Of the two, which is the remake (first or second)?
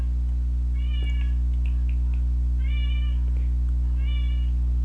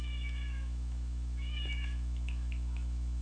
second